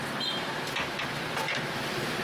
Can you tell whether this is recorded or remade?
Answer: recorded